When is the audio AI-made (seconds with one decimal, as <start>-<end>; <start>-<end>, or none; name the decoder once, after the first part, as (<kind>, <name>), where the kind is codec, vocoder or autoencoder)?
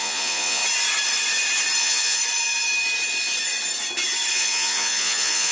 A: 0.0-0.6 (vocoder, Vocos); 1.8-2.2; 4.3-5.5